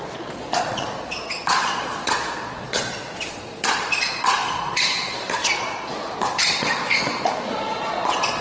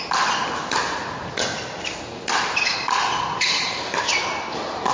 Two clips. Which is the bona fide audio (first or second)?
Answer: second